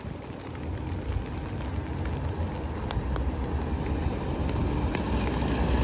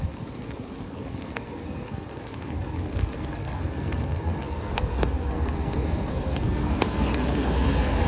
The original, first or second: first